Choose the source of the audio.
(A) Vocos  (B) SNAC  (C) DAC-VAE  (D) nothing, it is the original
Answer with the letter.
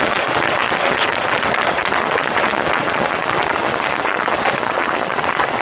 A